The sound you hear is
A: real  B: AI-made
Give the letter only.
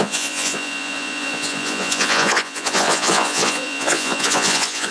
B